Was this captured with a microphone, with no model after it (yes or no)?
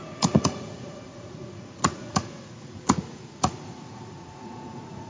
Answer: no